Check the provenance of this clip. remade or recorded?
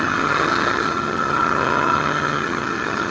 remade